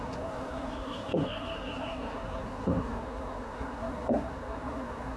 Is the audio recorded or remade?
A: remade